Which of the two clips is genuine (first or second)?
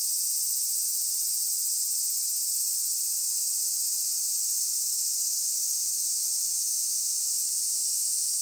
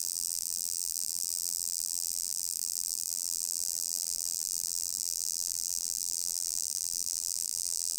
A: first